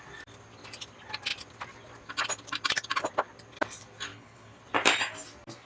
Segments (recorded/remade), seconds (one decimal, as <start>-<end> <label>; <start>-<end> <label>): 0.0-4.1 recorded; 4.1-4.6 remade; 4.6-5.7 recorded